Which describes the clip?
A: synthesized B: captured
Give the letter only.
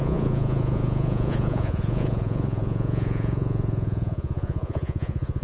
A